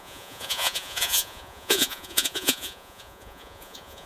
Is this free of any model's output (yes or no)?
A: no